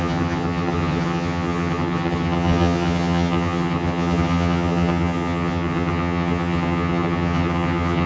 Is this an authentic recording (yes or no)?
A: no